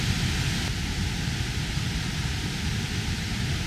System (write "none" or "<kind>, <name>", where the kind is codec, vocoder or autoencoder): none